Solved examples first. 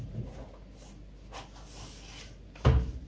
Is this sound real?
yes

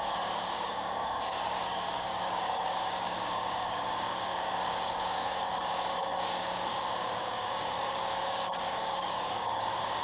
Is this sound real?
no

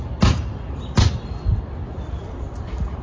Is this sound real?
yes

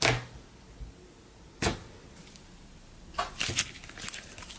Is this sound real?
yes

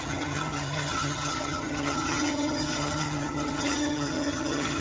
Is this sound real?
no